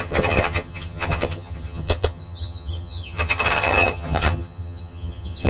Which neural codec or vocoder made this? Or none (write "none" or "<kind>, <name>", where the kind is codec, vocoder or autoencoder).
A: vocoder, HiFi-GAN